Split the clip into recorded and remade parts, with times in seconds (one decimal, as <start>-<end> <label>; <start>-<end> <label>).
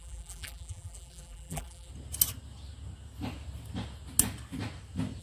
0.0-1.9 remade; 1.9-5.2 recorded